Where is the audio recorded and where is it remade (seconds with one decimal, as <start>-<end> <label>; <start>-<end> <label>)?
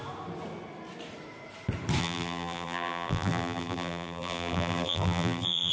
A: 0.0-2.0 recorded; 2.0-5.7 remade